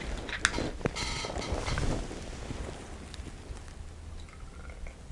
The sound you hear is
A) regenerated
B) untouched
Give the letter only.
B